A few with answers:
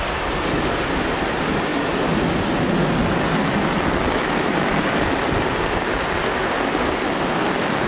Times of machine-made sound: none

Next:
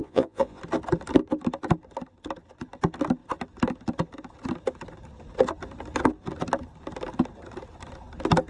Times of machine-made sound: 0.0-0.6 (vocoder, Vocos)

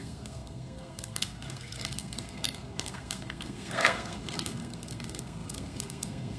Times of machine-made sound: 0.0-6.4 (codec, SNAC)